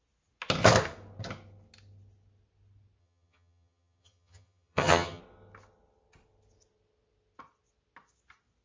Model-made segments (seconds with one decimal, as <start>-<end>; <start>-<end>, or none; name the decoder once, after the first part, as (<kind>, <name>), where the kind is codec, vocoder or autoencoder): 3.0-5.2 (vocoder, HiFi-GAN)